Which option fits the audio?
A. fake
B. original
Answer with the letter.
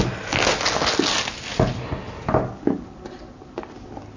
B